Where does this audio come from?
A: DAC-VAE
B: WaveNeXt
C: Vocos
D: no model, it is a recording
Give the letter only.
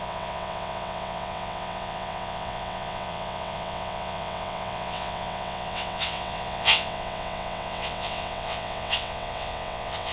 B